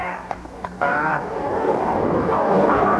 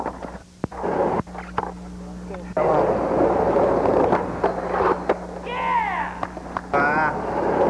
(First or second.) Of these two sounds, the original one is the second